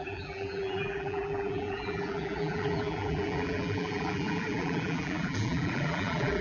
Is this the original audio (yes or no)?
no